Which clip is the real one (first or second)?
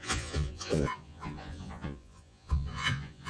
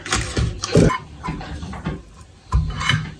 second